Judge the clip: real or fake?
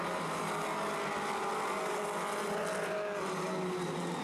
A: real